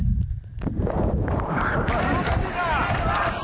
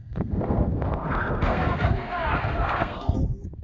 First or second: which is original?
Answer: first